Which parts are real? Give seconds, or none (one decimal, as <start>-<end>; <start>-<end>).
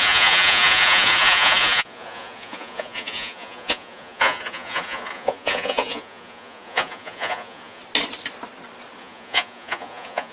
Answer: 7.8-9.0